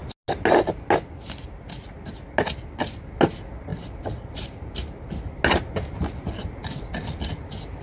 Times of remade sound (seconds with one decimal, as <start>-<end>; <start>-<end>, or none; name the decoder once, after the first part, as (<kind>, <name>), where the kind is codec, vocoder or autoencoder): none